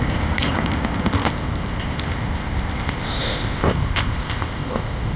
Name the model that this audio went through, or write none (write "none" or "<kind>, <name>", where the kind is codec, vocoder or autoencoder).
codec, ZipCodec